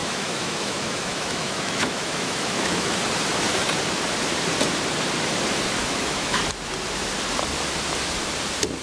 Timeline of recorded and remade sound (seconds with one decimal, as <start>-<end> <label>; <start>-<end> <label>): 0.0-3.0 remade; 3.0-5.8 recorded; 5.8-6.4 remade; 6.4-8.8 recorded